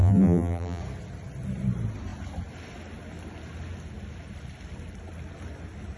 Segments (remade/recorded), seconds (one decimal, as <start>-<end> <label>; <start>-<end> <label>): 0.0-0.8 remade; 0.8-6.0 recorded